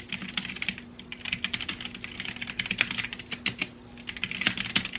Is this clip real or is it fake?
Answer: real